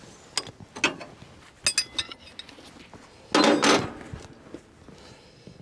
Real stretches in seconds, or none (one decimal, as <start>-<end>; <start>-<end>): 0.0-5.6